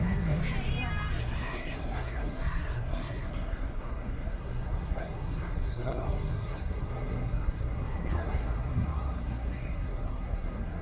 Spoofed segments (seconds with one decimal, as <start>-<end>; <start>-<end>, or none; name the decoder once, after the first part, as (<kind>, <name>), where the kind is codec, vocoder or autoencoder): 0.0-0.4 (codec, SNAC); 1.2-10.8